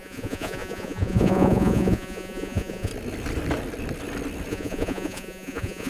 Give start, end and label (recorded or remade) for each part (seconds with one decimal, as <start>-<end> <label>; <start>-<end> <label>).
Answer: 0.0-2.9 remade; 2.9-4.5 recorded; 4.5-5.9 remade